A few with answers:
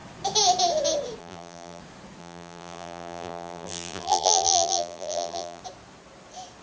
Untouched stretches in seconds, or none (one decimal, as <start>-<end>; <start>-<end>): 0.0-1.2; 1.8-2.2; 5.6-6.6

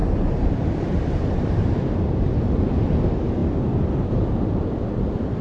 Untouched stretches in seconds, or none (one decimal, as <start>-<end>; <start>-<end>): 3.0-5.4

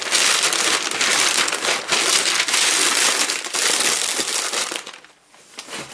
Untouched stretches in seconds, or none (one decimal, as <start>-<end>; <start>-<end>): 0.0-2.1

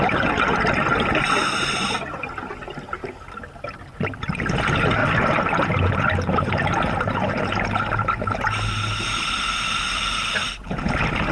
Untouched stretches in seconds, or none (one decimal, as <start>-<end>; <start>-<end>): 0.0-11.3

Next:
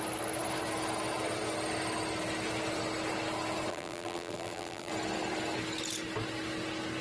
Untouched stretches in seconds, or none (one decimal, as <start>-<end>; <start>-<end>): 0.0-3.7; 4.9-7.0